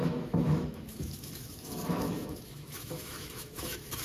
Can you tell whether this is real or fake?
fake